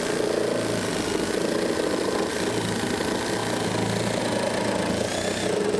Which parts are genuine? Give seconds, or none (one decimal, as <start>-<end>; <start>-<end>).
0.0-5.8